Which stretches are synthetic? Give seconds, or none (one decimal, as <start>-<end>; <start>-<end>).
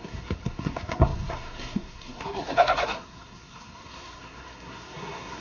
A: 0.0-5.4